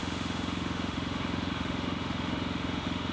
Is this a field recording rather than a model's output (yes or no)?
no